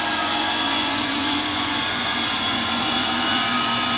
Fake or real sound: fake